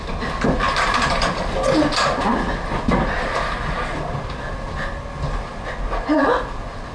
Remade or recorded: recorded